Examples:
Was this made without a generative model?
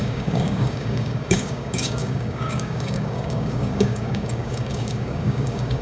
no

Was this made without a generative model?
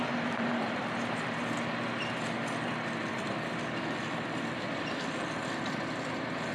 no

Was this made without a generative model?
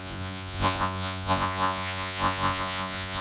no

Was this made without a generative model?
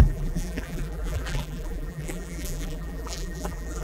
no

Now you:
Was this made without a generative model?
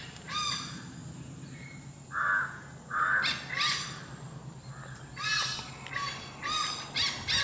yes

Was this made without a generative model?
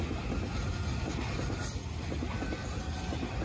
yes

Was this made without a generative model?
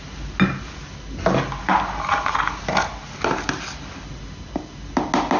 yes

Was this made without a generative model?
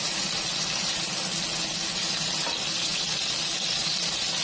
yes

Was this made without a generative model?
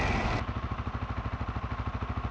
yes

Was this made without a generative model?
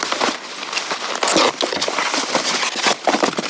yes